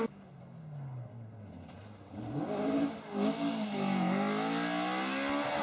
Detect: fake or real real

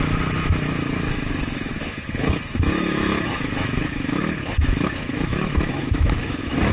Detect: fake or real fake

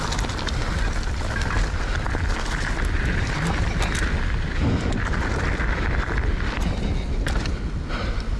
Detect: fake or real real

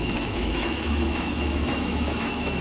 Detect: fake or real fake